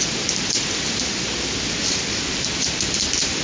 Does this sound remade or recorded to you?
remade